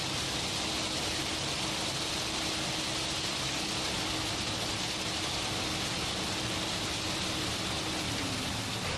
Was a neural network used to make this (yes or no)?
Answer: no